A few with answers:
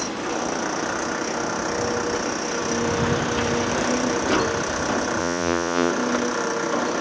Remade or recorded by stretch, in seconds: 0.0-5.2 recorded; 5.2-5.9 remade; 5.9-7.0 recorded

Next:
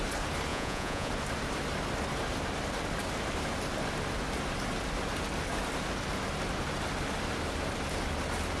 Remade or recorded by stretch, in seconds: 0.0-0.5 recorded; 0.5-1.1 remade; 1.1-8.6 recorded

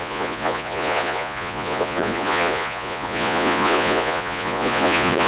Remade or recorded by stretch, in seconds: 0.0-5.3 remade

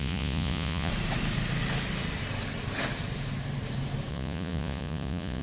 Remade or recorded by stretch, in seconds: 0.0-0.9 remade; 0.9-4.1 recorded; 4.1-5.4 remade